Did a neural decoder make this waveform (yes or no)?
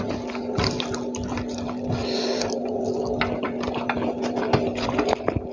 no